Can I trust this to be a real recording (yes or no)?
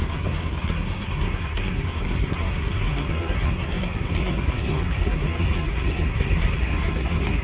no